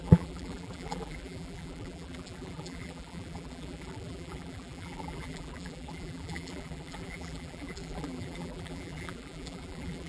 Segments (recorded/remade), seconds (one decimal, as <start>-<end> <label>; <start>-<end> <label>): 0.0-10.1 remade